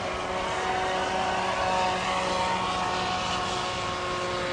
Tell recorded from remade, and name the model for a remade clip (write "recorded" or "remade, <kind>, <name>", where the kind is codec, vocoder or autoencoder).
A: recorded